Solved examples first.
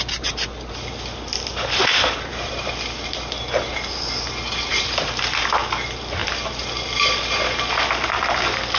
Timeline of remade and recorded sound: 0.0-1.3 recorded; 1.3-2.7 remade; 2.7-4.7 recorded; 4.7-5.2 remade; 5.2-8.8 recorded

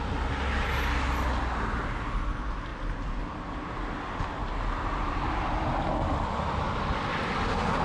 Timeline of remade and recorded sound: 0.0-7.8 recorded